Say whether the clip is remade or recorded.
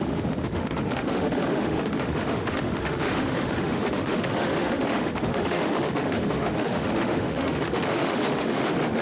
remade